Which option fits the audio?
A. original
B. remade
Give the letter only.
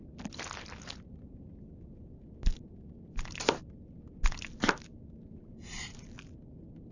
A